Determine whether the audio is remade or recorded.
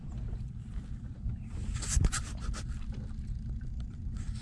remade